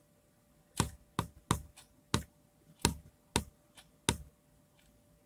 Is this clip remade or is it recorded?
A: recorded